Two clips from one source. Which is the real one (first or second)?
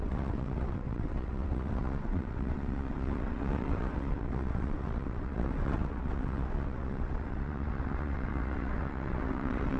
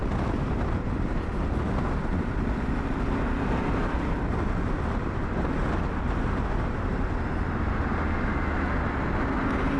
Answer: second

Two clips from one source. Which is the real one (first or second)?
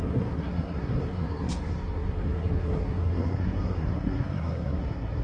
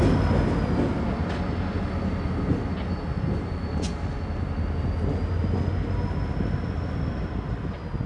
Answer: second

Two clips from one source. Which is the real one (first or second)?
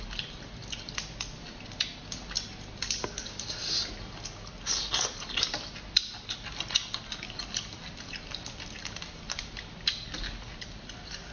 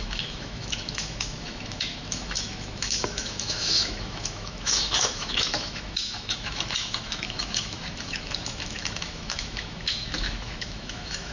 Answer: first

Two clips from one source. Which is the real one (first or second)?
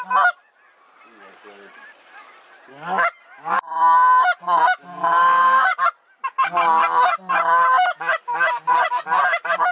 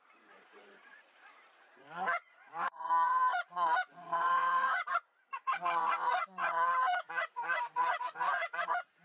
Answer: first